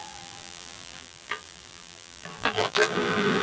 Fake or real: fake